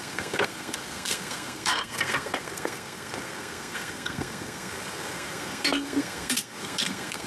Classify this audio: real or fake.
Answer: fake